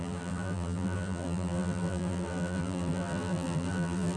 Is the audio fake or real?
fake